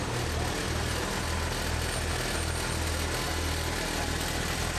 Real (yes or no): yes